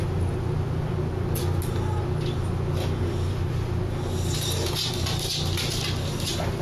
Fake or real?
real